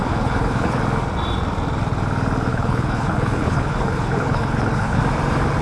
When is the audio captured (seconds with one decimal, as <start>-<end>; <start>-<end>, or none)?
0.8-2.5; 5.0-5.6